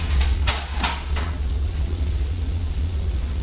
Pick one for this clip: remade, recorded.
remade